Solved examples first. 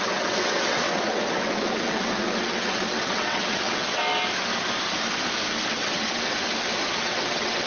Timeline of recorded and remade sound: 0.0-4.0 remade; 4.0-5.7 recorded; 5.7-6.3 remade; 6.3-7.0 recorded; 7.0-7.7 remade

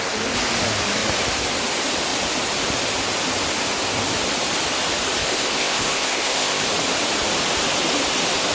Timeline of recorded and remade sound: 0.0-5.2 recorded; 5.2-6.7 remade; 6.7-8.5 recorded

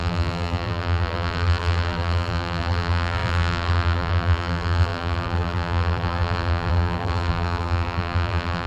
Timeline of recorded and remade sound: 0.0-8.7 remade

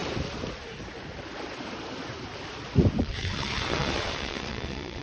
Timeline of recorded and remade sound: 0.0-3.0 recorded; 3.0-5.0 remade

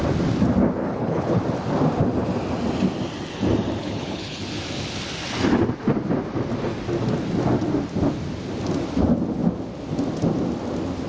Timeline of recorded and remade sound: 0.0-0.8 recorded; 0.8-1.4 remade; 1.4-3.8 recorded; 3.8-4.4 remade; 4.4-11.1 recorded

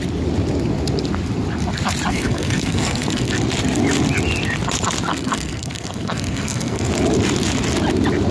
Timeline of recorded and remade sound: 0.0-2.1 recorded; 2.1-3.3 remade; 3.3-5.1 recorded; 5.1-6.9 remade; 6.9-8.3 recorded